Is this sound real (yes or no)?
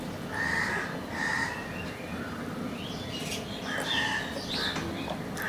yes